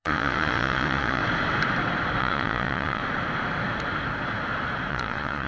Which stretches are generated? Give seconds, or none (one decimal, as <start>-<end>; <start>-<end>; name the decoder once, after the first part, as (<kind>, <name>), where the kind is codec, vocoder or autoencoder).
0.0-1.2 (vocoder, Vocos); 2.2-3.0; 4.9-5.5